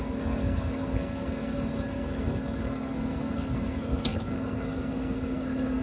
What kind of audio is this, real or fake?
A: fake